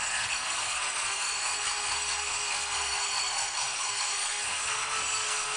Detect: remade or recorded remade